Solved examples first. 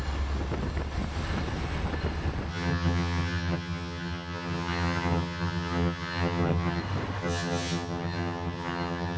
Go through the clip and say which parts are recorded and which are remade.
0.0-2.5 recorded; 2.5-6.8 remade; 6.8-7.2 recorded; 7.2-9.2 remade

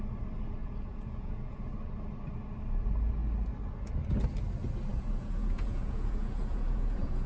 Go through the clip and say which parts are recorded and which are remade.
0.0-0.6 recorded; 0.6-1.6 remade; 1.6-4.9 recorded; 4.9-7.3 remade

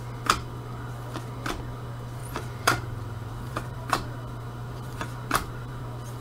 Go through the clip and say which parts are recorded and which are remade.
0.0-2.2 recorded; 2.2-5.8 remade; 5.8-6.2 recorded